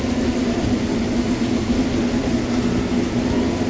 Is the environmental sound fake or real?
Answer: real